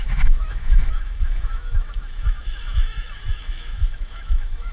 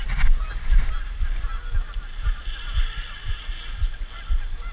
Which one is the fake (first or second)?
first